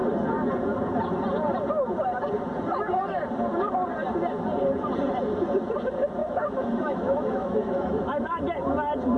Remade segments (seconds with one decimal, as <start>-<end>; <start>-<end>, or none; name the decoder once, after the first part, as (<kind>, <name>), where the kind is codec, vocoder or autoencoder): 6.2-8.4 (autoencoder, DAC-VAE)